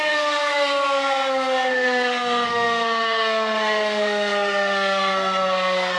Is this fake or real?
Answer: fake